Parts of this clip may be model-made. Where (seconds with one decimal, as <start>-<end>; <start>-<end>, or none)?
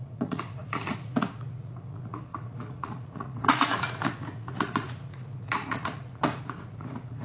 0.0-7.2